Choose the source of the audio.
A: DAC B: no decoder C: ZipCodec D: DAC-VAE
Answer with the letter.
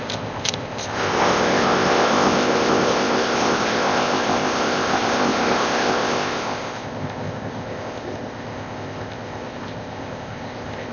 C